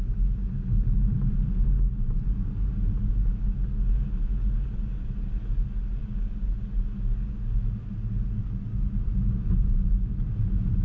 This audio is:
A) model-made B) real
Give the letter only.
B